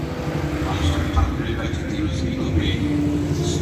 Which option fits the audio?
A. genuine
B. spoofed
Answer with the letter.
A